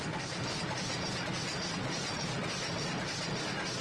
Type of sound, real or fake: real